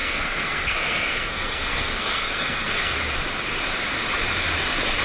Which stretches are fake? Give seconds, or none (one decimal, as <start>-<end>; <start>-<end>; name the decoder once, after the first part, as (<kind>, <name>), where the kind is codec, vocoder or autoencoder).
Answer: 0.0-3.0 (codec, SNAC)